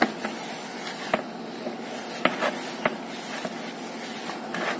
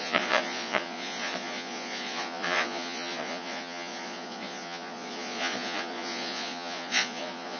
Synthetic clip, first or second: second